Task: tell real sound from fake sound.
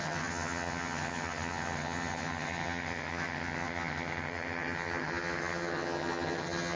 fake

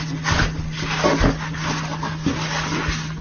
real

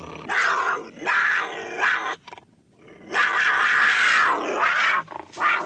real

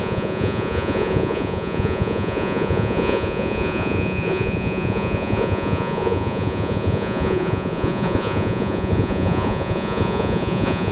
fake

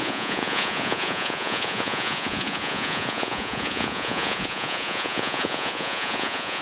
fake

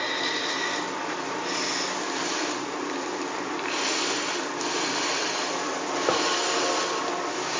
real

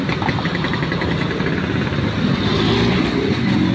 real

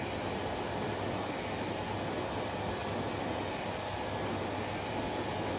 real